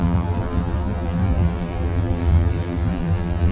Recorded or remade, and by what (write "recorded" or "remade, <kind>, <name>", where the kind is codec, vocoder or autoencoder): remade, vocoder, BigVGAN v2